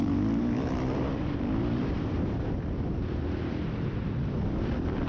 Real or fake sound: fake